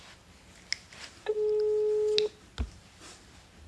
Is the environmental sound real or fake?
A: real